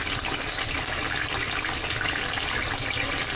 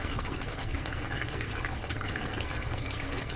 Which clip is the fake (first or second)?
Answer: second